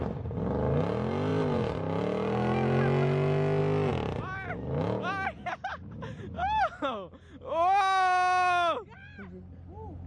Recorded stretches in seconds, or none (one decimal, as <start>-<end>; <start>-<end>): 0.0-10.1